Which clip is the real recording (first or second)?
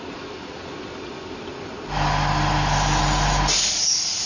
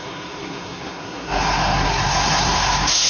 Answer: first